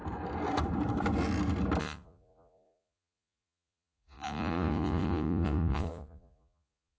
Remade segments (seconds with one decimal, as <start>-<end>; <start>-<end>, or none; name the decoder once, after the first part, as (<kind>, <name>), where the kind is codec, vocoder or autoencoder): 1.8-7.0 (vocoder, Vocos)